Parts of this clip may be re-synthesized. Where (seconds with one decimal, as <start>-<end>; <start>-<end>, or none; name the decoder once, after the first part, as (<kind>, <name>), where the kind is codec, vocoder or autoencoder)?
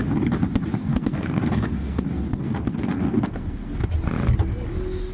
0.8-3.9 (codec, SNAC)